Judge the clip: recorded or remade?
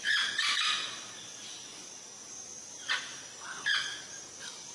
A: recorded